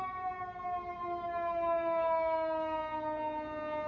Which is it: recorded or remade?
recorded